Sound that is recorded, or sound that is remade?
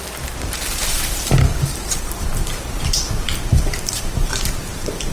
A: remade